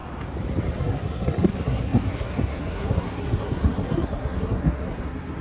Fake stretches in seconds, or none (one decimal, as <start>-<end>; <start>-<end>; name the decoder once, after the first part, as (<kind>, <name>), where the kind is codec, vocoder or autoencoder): 0.8-5.4 (codec, SNAC)